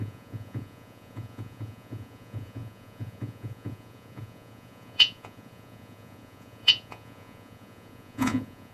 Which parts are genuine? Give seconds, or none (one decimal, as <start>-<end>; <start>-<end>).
none